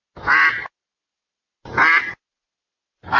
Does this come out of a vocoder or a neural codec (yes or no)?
no